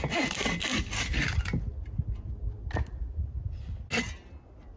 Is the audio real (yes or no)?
yes